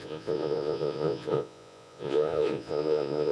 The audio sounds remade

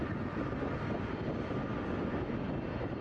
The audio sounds recorded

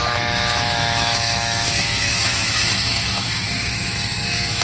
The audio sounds remade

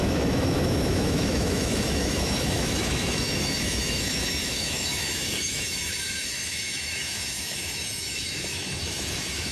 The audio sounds remade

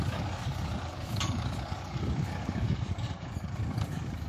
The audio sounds remade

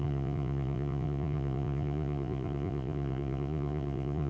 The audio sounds remade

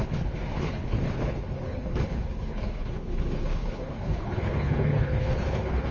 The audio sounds remade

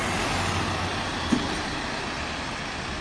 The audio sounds recorded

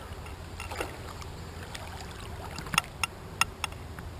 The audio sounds recorded